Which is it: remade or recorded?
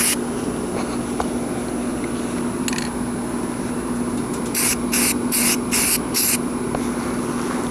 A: recorded